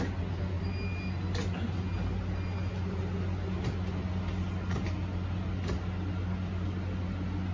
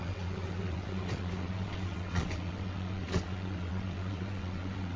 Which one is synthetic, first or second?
second